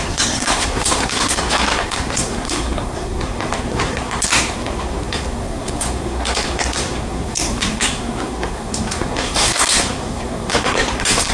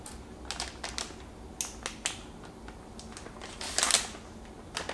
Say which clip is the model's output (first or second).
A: first